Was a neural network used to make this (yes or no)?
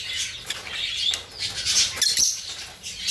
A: no